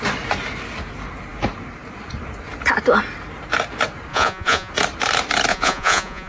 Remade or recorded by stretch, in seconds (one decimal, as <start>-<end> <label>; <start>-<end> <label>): 0.0-4.1 recorded; 4.1-4.7 remade; 4.7-5.5 recorded; 5.5-6.3 remade